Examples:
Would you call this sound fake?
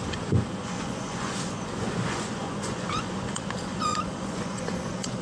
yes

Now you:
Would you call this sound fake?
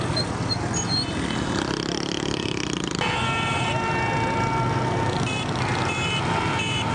no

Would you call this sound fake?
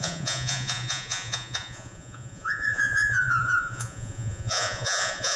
yes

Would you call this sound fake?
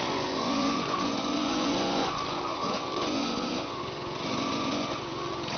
yes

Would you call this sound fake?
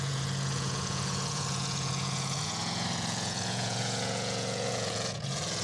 yes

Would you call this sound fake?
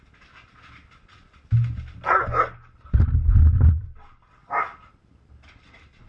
no